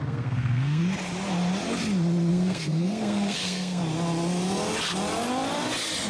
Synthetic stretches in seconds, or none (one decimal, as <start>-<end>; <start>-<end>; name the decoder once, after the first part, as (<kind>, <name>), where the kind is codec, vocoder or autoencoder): 0.0-0.8 (codec, SNAC); 2.3-3.8